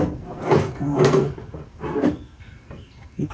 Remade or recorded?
remade